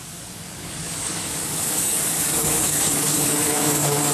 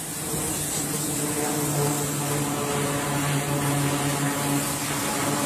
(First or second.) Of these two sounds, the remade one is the first